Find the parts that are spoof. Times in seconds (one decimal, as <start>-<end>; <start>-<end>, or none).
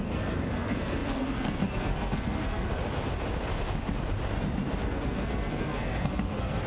0.0-2.7; 4.8-6.7